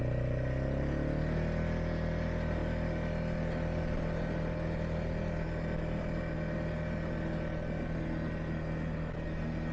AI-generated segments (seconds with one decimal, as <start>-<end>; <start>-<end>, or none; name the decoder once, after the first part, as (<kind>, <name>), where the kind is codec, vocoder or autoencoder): none